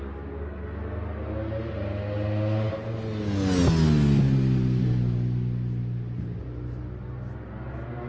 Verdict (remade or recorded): recorded